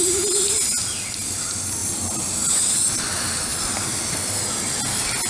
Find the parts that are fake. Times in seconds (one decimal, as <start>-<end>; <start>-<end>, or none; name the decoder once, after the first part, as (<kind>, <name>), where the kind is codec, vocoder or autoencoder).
0.8-1.3 (vocoder, BigVGAN v2); 1.8-3.0; 3.5-4.5